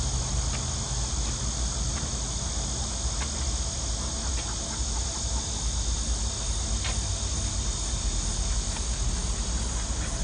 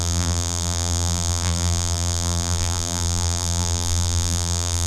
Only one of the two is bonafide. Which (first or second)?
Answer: first